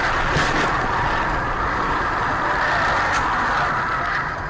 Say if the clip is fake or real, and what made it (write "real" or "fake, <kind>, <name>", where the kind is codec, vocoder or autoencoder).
real